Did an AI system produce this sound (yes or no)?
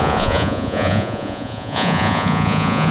yes